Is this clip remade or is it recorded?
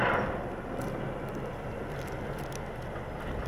recorded